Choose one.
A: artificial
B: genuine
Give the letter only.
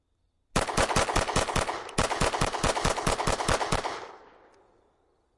B